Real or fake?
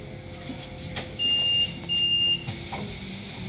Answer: real